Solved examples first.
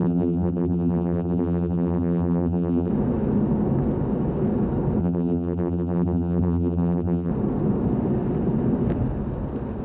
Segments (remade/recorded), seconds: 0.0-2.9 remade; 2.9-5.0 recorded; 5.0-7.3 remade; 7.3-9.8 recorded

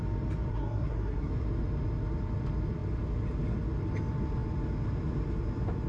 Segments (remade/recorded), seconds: 0.0-0.5 recorded; 0.5-1.3 remade; 1.3-5.9 recorded

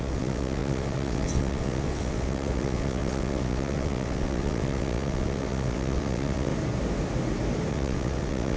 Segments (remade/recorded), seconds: 0.0-6.5 remade; 6.5-7.7 recorded; 7.7-8.6 remade

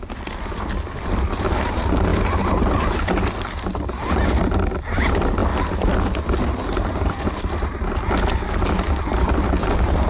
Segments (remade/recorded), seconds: 0.0-10.1 recorded

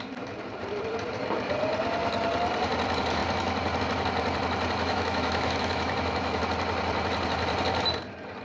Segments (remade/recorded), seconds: 0.0-4.8 recorded; 4.8-6.4 remade; 6.4-8.4 recorded

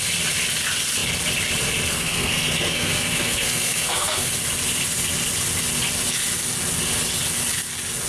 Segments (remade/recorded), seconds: 0.0-1.9 recorded; 1.9-4.3 remade; 4.3-8.1 recorded